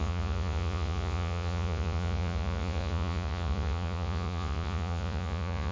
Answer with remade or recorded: remade